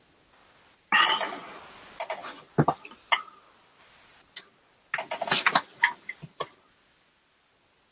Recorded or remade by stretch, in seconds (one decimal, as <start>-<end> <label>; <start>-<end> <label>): 0.0-0.9 recorded; 0.9-1.6 remade; 1.6-2.2 recorded; 2.2-3.0 remade; 3.0-7.9 recorded